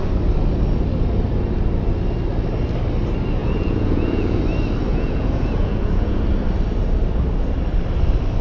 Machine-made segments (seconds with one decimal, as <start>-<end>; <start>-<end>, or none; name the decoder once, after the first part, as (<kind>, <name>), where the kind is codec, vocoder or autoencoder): 3.4-4.4 (vocoder, Vocos); 4.9-6.2